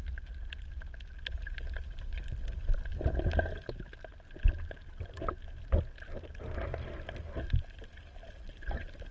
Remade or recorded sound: recorded